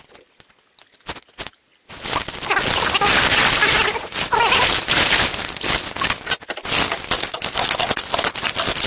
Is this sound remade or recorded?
recorded